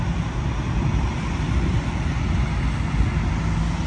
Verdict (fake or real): real